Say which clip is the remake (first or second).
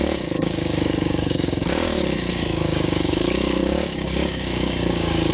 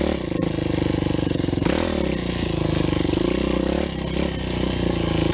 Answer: first